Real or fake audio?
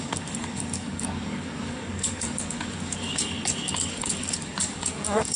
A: fake